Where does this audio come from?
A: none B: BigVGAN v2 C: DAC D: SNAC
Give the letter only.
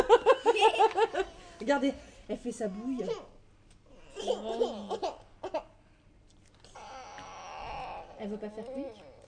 A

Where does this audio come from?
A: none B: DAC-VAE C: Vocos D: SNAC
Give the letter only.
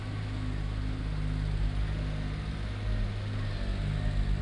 A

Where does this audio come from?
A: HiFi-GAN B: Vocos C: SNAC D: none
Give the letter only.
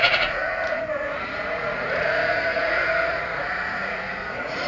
B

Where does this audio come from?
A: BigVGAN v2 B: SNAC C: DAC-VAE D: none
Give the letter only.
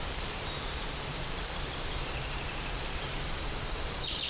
A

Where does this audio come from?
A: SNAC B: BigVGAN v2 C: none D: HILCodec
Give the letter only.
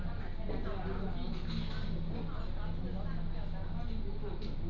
C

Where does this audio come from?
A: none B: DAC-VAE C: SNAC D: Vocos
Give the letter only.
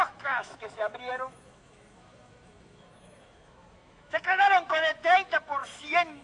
B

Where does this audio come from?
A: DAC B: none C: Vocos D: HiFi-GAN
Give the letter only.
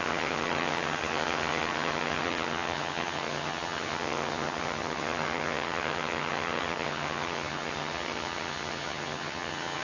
D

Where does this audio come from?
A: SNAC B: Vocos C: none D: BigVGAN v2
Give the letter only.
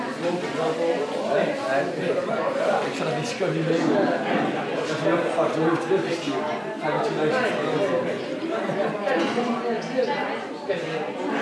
C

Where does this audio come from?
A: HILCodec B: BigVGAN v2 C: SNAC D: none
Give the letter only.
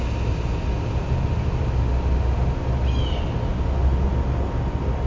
D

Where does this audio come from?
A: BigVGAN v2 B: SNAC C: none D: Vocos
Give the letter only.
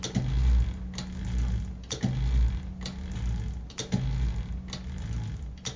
C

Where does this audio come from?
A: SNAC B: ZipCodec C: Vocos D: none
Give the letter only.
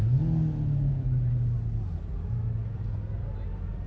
D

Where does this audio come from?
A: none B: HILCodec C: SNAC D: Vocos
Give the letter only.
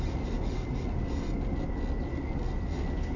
A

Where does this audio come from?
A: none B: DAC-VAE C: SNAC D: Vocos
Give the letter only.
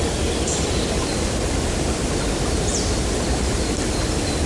A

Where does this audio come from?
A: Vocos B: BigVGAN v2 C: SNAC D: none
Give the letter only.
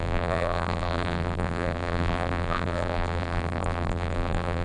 B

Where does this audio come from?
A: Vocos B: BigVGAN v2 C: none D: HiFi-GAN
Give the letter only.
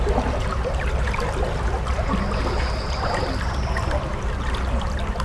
C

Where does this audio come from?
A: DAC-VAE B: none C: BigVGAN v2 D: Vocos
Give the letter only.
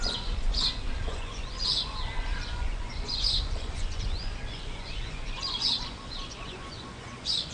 D